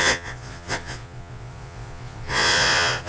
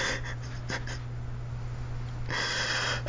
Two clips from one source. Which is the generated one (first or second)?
first